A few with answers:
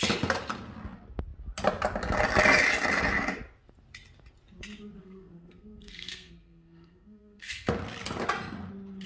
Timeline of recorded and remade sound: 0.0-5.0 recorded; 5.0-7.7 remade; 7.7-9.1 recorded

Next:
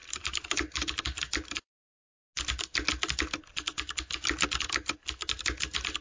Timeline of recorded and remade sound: 0.0-1.7 remade; 1.7-6.0 recorded

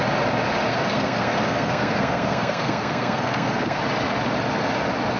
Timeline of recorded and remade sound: 0.0-0.7 recorded; 0.7-3.8 remade; 3.8-5.2 recorded

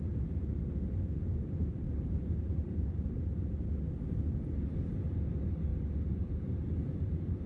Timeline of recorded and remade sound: 0.0-1.6 recorded; 1.6-3.2 remade; 3.2-5.7 recorded; 5.7-7.5 remade

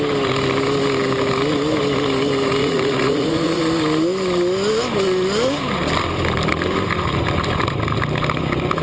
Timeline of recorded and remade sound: 0.0-2.6 recorded; 2.6-3.6 remade; 3.6-8.8 recorded

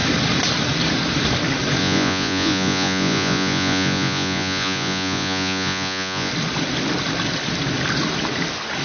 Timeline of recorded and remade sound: 0.0-1.8 recorded; 1.8-6.3 remade; 6.3-8.8 recorded

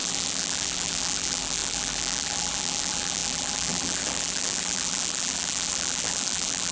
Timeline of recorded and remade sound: 0.0-6.7 remade

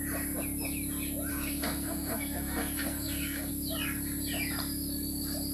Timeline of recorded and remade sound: 0.0-1.3 recorded; 1.3-3.5 remade; 3.5-5.5 recorded